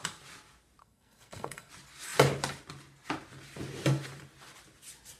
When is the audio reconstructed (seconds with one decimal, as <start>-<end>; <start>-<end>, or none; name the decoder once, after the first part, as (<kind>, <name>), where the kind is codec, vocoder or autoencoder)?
0.8-1.7 (codec, SNAC)